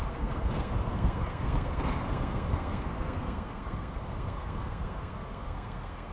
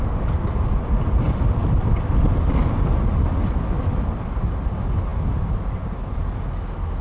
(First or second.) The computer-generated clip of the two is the first